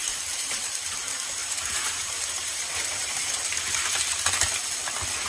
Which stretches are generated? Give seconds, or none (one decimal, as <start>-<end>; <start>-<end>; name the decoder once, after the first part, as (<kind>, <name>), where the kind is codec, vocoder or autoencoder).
0.0-0.7 (vocoder, BigVGAN v2); 1.4-4.0